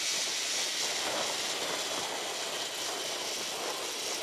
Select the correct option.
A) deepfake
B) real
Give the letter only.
B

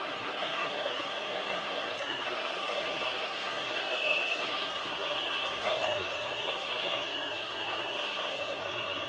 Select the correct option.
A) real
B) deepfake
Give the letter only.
B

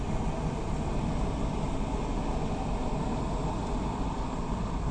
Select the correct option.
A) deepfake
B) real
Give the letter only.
B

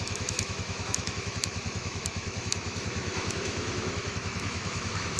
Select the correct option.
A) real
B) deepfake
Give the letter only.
B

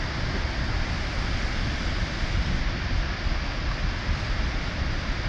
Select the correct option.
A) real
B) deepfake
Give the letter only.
A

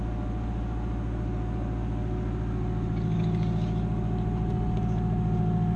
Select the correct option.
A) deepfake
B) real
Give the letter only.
B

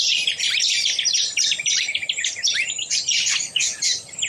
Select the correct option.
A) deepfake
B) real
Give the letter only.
A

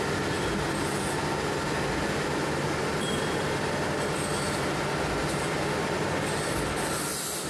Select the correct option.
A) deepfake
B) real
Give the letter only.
B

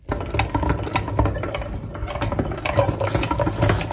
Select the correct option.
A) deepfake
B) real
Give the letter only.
B